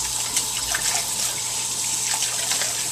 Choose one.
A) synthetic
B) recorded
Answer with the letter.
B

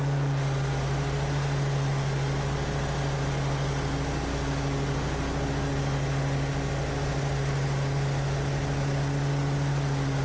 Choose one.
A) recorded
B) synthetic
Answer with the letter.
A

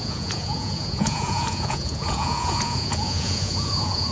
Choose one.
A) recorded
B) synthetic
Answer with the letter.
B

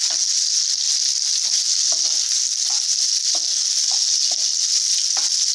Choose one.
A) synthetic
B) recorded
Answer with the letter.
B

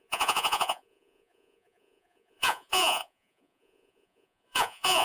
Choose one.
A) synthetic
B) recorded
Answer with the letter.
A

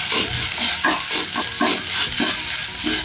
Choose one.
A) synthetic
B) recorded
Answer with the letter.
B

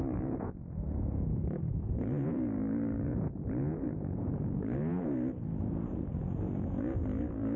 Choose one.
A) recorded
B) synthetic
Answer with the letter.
B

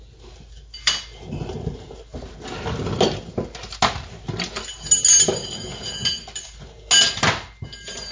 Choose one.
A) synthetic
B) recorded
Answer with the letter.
B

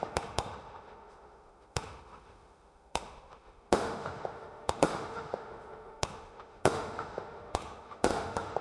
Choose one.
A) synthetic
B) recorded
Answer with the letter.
A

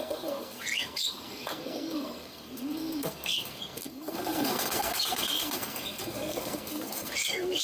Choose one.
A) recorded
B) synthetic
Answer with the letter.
B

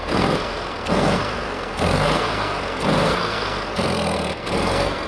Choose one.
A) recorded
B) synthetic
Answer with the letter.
B